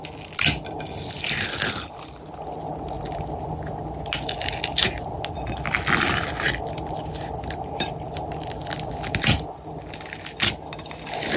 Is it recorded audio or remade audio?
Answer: recorded